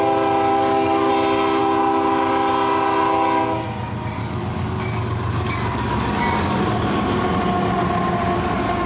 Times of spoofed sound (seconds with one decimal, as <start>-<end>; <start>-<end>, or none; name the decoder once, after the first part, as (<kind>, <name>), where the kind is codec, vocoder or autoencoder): 0.5-1.1 (codec, DAC); 4.2-6.6